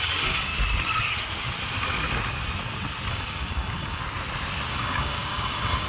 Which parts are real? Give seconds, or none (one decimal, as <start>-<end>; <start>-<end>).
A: 0.5-3.1; 4.0-4.7